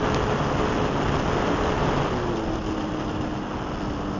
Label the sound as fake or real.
real